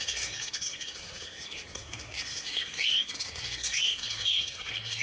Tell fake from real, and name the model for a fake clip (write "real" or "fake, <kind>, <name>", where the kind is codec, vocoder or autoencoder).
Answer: fake, codec, SNAC